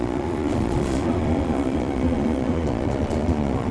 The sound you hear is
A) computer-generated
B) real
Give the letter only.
A